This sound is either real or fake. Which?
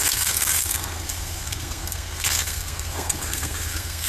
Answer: fake